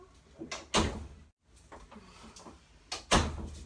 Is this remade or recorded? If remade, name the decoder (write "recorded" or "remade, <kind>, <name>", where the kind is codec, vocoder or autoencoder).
recorded